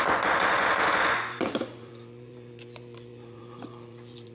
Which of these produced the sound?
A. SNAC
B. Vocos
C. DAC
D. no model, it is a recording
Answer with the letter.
B